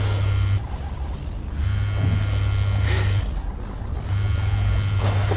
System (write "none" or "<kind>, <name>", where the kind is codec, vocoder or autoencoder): none